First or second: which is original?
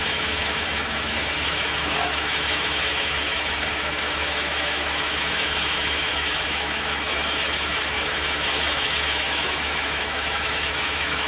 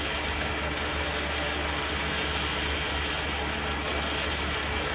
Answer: second